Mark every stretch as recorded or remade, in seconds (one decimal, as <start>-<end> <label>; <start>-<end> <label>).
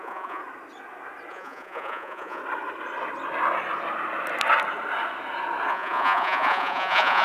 0.0-0.4 remade; 0.4-1.3 recorded; 1.3-2.4 remade; 2.4-5.7 recorded; 5.7-7.2 remade